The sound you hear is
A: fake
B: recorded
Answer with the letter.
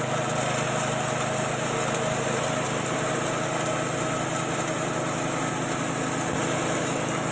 B